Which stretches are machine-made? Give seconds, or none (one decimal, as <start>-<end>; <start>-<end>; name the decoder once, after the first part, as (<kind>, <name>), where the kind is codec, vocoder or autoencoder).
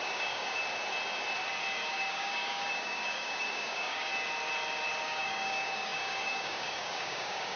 0.0-0.6 (codec, DAC); 1.9-4.1; 5.0-7.6